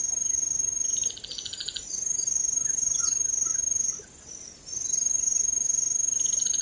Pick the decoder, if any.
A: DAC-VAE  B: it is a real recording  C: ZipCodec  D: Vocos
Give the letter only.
B